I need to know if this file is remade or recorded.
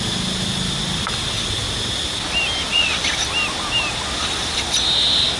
recorded